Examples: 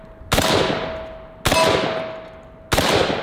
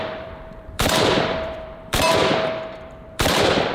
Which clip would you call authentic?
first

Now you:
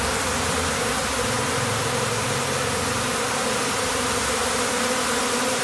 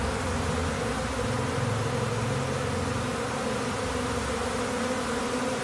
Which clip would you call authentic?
second